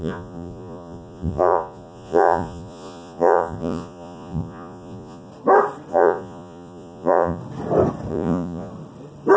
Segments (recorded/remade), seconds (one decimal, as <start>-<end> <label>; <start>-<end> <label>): 0.0-5.3 remade; 5.3-5.9 recorded; 5.9-7.4 remade; 7.4-8.1 recorded; 8.1-8.7 remade; 8.7-9.4 recorded